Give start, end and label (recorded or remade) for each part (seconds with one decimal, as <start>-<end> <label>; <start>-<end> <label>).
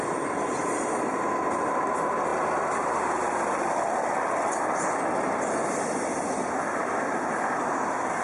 0.0-8.2 recorded